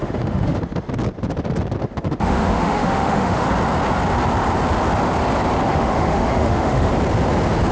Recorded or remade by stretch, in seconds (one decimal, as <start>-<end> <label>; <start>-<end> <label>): 0.0-0.6 remade; 0.6-1.8 recorded; 1.8-3.5 remade; 3.5-5.7 recorded; 5.7-6.9 remade; 6.9-7.7 recorded